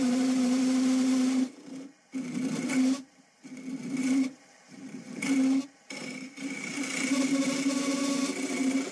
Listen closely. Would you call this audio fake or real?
fake